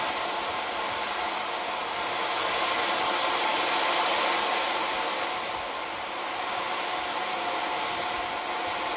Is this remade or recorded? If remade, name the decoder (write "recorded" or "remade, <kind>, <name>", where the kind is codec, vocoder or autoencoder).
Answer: recorded